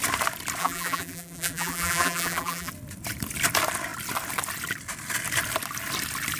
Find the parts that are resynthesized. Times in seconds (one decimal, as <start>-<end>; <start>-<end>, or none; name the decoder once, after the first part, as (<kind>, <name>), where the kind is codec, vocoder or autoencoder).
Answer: 0.6-2.7 (vocoder, BigVGAN v2)